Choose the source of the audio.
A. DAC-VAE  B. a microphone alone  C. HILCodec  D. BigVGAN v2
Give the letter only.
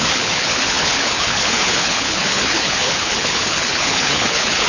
C